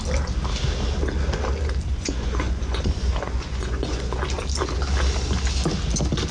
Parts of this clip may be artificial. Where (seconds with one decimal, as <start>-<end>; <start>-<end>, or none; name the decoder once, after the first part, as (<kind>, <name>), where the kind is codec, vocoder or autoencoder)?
1.9-4.2 (vocoder, Vocos)